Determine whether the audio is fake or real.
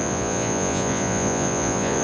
fake